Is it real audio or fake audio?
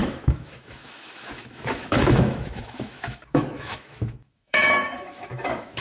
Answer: fake